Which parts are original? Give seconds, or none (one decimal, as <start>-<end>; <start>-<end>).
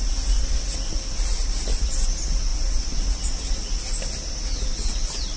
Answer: 0.0-5.4